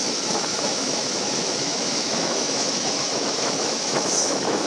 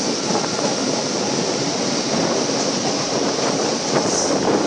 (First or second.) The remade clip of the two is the first